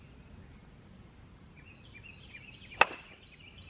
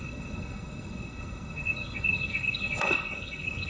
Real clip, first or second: first